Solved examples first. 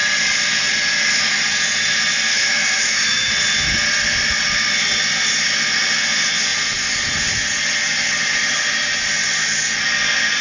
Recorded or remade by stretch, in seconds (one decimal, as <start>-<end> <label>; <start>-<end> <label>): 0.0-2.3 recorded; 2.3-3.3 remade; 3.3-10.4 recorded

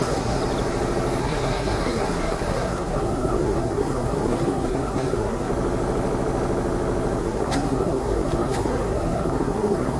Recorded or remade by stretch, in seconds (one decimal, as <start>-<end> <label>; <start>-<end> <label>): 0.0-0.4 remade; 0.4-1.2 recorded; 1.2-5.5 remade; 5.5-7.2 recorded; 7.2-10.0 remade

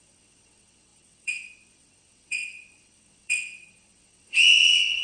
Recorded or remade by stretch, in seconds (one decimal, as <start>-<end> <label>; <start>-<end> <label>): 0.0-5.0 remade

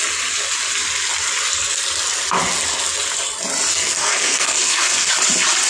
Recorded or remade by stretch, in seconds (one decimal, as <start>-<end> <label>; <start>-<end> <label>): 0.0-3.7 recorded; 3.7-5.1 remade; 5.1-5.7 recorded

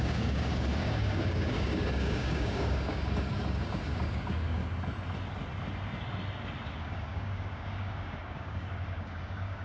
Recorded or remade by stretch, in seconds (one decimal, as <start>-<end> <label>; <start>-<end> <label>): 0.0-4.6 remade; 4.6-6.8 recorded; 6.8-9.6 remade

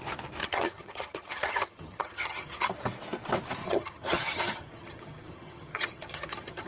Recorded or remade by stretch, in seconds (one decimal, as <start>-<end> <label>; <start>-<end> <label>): 0.0-0.4 recorded; 0.4-2.7 remade; 2.7-3.6 recorded; 3.6-6.7 remade

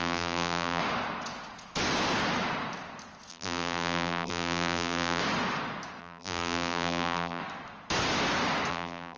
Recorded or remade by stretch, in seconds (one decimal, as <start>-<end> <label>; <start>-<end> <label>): 0.0-0.8 remade; 0.8-3.3 recorded; 3.3-5.2 remade; 5.2-6.0 recorded; 6.0-7.4 remade; 7.4-8.7 recorded; 8.7-9.2 remade